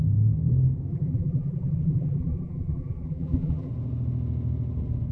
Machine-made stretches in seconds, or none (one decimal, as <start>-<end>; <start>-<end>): 0.9-3.7